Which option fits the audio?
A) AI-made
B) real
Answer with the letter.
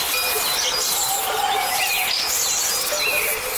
B